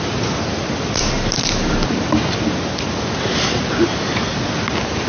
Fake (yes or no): no